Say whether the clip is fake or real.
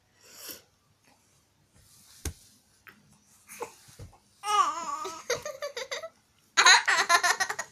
real